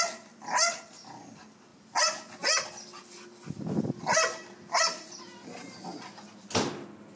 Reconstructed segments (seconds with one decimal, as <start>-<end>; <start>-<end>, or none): none